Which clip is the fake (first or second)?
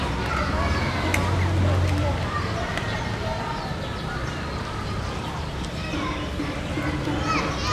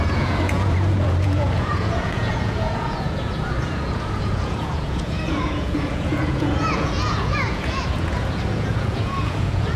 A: second